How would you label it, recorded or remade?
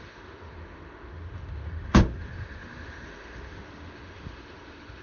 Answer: remade